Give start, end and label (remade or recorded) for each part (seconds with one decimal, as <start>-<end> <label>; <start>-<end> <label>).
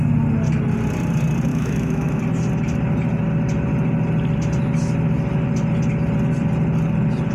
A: 0.0-1.5 recorded; 1.5-2.2 remade; 2.2-7.3 recorded